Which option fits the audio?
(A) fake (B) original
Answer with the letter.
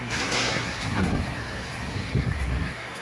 A